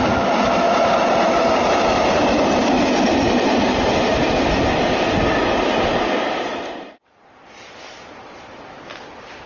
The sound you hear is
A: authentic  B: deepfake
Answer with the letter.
A